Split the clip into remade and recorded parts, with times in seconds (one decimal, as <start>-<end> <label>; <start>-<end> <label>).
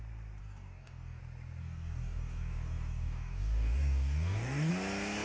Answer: 0.0-0.4 recorded; 0.4-1.2 remade; 1.2-1.6 recorded; 1.6-4.7 remade; 4.7-5.2 recorded